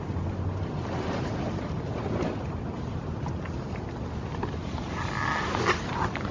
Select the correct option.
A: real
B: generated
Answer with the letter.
A